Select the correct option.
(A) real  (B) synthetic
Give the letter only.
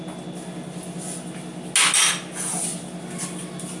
A